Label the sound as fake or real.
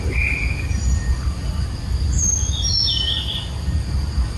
real